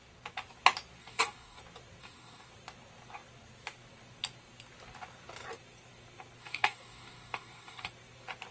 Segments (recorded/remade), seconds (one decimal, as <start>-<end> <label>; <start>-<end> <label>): 0.0-1.0 recorded; 1.0-1.6 remade; 1.6-2.0 recorded; 2.0-2.5 remade; 2.5-6.4 recorded; 6.4-7.9 remade; 7.9-8.5 recorded